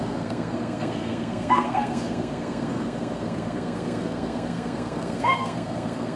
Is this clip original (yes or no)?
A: no